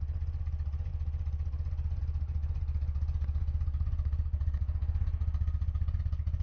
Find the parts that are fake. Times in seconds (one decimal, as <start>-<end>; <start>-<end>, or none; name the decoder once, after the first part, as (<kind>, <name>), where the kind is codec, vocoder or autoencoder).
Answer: none